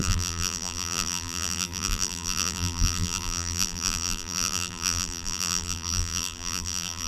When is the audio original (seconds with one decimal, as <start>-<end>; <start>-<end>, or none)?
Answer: none